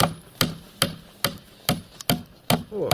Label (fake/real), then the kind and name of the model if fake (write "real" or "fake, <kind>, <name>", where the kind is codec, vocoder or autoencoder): real